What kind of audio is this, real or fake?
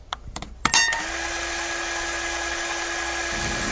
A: real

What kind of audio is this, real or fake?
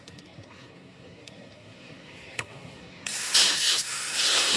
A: fake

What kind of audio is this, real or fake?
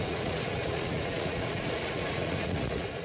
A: fake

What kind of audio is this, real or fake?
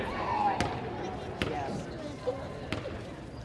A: real